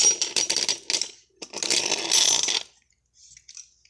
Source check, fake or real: real